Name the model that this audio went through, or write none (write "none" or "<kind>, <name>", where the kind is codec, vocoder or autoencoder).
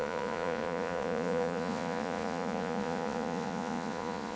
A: vocoder, Vocos